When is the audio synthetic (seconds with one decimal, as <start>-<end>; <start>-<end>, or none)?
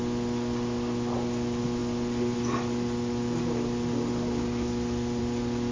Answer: 1.8-5.2